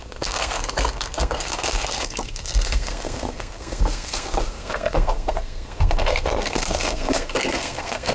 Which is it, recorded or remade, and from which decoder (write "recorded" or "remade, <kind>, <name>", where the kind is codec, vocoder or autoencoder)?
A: remade, codec, SNAC